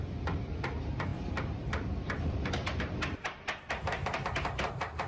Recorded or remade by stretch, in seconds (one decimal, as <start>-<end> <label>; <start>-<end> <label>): 0.0-1.1 recorded; 1.1-2.5 remade; 2.5-5.1 recorded